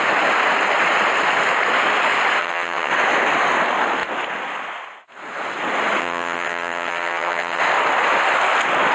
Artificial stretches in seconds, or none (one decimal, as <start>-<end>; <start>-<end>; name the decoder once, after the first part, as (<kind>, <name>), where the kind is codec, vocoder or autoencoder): 2.4-2.9 (vocoder, HiFi-GAN); 6.0-7.6